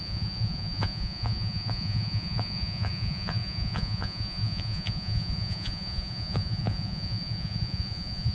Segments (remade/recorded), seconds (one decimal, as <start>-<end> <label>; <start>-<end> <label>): 0.0-8.3 remade

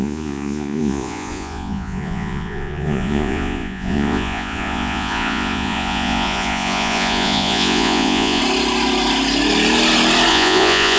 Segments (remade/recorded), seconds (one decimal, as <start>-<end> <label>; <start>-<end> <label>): 0.0-8.4 remade; 8.4-10.3 recorded; 10.3-11.0 remade

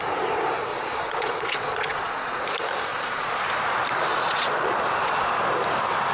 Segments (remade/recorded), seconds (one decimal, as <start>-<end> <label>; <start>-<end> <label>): 0.0-0.7 recorded; 0.7-2.4 remade; 2.4-2.9 recorded; 2.9-3.4 remade; 3.4-4.1 recorded; 4.1-5.3 remade; 5.3-6.1 recorded

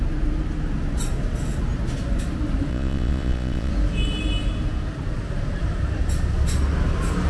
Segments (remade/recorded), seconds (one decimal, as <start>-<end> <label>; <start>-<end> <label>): 0.0-2.7 recorded; 2.7-3.7 remade; 3.7-7.3 recorded

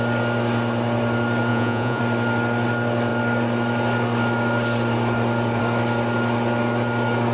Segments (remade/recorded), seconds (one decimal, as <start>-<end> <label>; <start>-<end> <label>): 0.0-1.5 recorded; 1.5-2.0 remade; 2.0-7.3 recorded

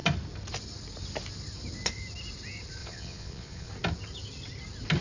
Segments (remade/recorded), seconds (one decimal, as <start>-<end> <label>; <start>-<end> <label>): 0.0-2.8 recorded; 2.8-3.7 remade; 3.7-5.0 recorded